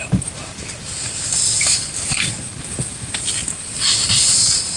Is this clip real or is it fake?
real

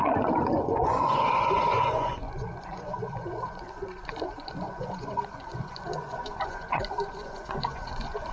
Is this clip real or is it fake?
fake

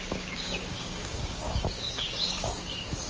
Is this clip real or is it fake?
fake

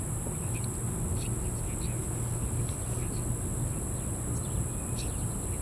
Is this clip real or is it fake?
real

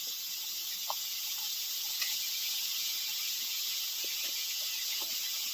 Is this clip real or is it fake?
fake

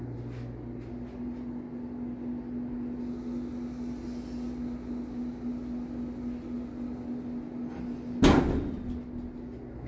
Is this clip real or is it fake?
real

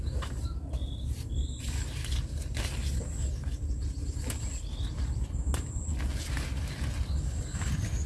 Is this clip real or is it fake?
real